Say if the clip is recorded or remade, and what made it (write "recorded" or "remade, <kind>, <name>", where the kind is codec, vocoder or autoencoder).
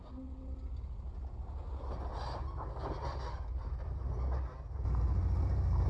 recorded